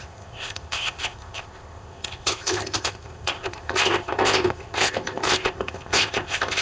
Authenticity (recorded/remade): remade